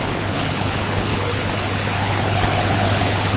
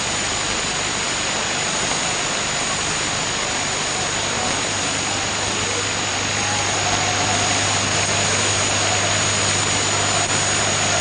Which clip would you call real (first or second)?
second